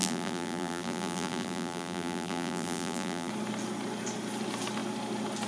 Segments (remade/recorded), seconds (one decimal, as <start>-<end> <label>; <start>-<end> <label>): 0.0-3.3 remade; 3.3-5.5 recorded